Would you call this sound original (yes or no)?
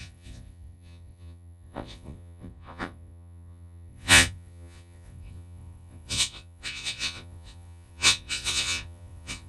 no